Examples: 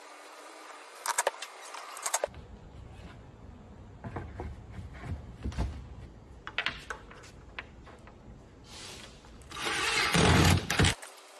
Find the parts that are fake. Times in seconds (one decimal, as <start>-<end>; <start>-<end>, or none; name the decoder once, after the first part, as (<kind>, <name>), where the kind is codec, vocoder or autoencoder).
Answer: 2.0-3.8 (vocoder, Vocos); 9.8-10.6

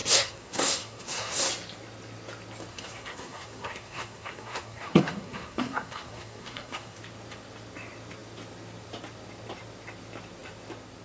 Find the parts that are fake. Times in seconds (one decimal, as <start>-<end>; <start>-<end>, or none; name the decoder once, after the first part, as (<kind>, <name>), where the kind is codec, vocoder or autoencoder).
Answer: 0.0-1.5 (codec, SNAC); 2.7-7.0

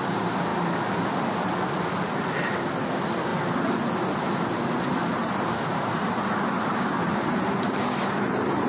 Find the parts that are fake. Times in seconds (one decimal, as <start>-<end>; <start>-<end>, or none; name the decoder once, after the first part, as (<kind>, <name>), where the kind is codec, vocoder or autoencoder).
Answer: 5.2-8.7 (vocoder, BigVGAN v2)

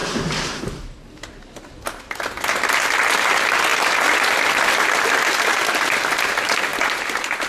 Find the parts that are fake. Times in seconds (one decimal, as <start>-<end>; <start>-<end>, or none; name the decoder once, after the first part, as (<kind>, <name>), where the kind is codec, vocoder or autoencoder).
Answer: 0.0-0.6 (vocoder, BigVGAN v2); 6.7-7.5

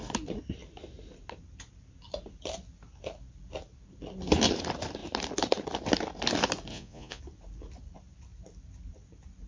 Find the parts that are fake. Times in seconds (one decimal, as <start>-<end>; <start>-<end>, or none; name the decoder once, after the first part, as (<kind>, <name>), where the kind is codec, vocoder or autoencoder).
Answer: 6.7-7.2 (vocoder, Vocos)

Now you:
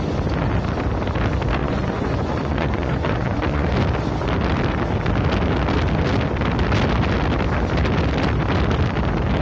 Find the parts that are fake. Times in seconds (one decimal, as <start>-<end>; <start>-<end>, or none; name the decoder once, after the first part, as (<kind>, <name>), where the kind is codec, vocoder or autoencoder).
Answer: 1.6-3.7 (vocoder, Vocos)

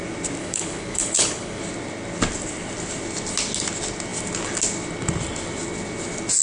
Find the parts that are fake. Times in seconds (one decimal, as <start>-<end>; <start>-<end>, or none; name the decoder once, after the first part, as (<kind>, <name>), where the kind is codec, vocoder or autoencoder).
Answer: 0.4-1.6 (codec, HILCodec)